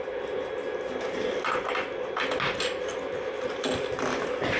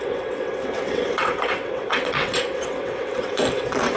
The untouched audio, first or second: first